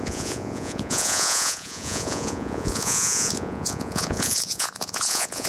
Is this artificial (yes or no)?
yes